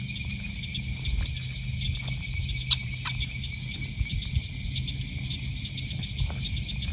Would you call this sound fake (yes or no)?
no